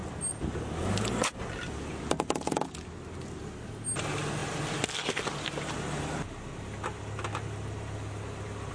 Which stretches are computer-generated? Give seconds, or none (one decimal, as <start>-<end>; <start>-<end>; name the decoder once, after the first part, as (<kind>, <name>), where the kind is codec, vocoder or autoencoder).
none